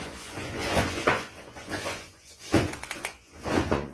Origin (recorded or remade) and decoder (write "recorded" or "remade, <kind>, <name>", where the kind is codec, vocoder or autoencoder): remade, vocoder, Vocos